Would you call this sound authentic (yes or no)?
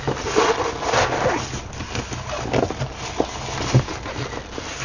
yes